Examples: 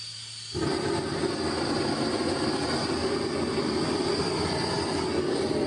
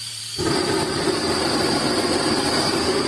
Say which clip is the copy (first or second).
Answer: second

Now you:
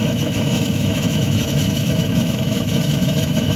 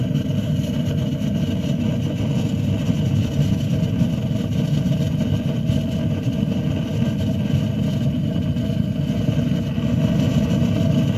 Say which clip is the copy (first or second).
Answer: first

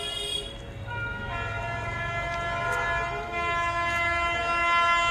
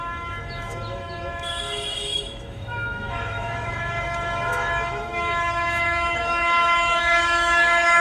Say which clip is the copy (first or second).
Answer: second